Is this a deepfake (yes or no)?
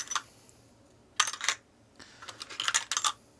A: no